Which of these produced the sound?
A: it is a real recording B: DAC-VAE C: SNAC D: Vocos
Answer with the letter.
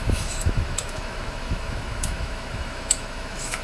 B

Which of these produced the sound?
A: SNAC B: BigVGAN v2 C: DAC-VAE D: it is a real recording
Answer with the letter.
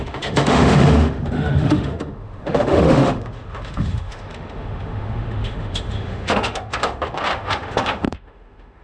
C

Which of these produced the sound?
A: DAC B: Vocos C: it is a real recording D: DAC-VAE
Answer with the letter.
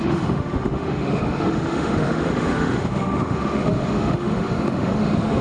D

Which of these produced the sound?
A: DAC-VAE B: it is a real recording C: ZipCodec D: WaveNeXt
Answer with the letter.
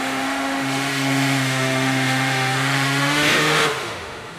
A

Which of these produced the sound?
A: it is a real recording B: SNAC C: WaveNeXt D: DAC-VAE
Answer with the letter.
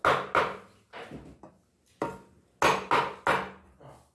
A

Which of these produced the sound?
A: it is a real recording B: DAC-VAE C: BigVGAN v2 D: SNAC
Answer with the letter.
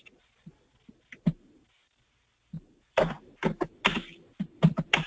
A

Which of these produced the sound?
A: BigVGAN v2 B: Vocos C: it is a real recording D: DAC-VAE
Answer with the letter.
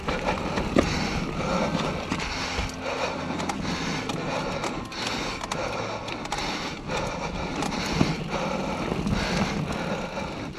C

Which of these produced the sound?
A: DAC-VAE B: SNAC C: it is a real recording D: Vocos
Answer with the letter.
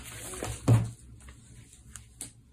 C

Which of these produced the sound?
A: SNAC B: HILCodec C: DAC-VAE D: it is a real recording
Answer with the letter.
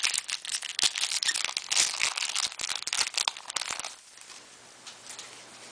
D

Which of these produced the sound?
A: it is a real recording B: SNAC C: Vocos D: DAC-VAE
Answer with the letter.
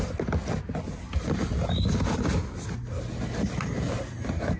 A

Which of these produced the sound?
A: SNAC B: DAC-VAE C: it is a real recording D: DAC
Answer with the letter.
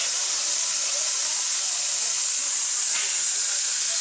C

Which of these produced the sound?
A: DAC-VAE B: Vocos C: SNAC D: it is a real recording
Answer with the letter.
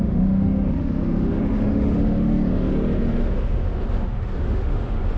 A